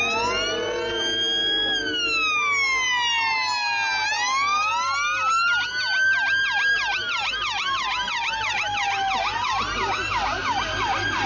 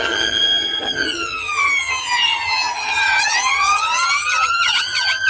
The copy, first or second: second